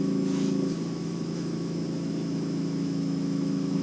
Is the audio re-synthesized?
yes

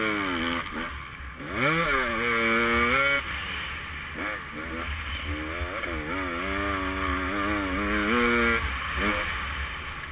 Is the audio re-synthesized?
no